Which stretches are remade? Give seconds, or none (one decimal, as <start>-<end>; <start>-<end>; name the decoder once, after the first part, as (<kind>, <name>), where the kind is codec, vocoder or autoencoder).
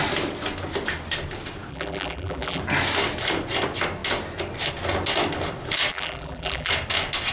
1.7-2.6 (vocoder, BigVGAN v2); 5.9-6.7